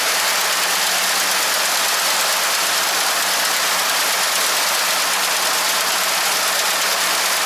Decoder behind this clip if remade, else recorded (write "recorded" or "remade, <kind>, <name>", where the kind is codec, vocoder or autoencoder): recorded